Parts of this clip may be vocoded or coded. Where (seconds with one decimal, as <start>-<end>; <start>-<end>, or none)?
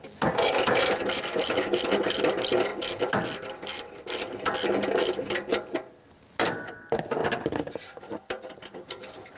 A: none